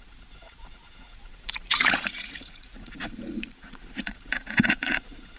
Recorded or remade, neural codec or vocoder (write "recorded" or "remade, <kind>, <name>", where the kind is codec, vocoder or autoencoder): remade, vocoder, Vocos